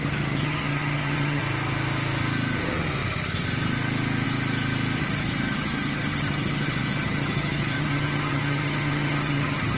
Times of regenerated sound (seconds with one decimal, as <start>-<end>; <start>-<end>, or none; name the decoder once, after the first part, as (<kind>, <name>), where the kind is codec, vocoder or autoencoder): 0.0-1.4 (vocoder, HiFi-GAN); 5.0-9.8